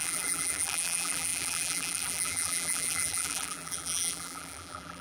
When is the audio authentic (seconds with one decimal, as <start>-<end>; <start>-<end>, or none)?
none